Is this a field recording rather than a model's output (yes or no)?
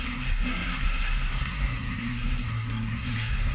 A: no